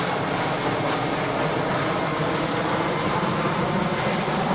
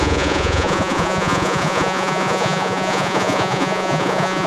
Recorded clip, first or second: first